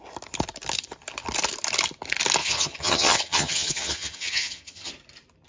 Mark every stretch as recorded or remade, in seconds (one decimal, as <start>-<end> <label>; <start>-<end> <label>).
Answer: 0.0-2.4 recorded; 2.4-4.9 remade; 4.9-5.5 recorded